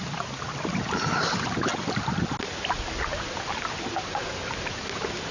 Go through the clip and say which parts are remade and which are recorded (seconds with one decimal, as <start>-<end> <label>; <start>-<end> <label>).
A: 0.0-5.3 recorded